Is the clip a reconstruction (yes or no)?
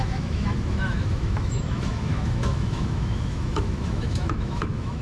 yes